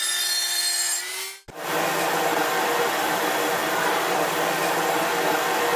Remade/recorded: recorded